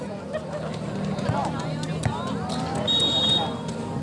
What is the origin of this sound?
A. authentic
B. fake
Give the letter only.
A